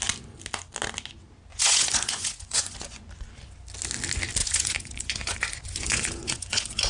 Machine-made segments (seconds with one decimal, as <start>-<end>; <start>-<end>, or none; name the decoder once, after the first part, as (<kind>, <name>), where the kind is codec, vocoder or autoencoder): 1.5-3.1 (vocoder, Vocos); 4.4-6.9